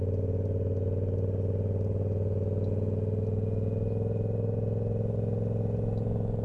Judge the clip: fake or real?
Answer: real